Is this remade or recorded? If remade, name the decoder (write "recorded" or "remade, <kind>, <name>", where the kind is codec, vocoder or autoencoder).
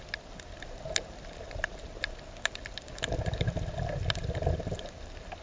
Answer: recorded